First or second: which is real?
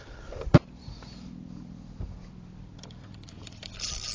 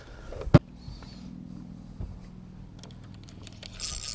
second